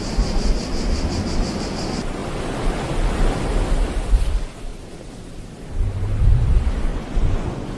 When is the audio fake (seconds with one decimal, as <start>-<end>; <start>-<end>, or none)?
6.9-7.8